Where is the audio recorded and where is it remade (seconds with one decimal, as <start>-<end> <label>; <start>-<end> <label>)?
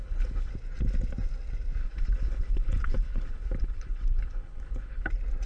0.0-0.5 remade; 0.5-1.8 recorded; 1.8-5.1 remade; 5.1-5.5 recorded